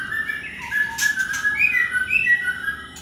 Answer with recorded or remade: recorded